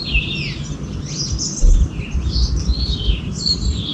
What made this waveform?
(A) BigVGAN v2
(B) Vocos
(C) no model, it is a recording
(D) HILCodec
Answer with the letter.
C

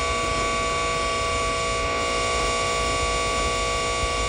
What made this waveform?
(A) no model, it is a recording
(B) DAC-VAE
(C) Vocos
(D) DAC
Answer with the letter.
A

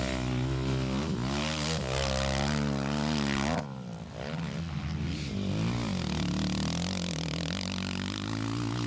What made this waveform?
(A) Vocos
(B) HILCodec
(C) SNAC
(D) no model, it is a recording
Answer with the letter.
D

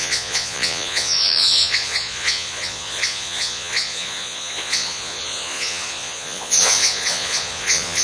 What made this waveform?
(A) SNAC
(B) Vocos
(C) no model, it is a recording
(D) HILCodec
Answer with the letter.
B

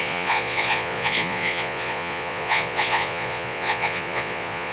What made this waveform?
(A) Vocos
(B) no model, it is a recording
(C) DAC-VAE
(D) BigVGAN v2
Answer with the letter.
A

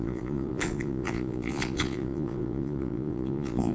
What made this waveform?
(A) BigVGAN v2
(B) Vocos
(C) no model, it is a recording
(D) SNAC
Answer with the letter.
B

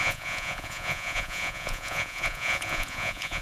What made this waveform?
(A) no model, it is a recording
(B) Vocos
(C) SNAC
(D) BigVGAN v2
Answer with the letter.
B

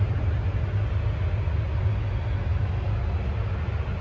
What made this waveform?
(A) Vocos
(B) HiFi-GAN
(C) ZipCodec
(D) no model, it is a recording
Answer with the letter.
D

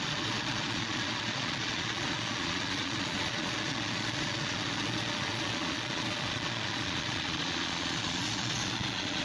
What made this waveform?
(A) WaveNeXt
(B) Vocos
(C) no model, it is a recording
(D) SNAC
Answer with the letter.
B